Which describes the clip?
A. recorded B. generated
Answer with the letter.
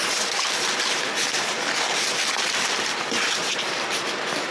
B